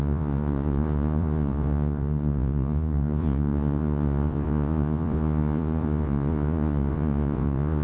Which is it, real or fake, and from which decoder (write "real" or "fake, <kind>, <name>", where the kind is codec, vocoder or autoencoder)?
fake, vocoder, Vocos